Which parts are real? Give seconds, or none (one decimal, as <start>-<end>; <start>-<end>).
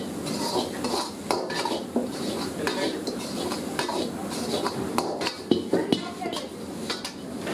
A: 0.0-2.0; 3.2-7.5